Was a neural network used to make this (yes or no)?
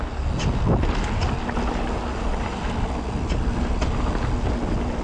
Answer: no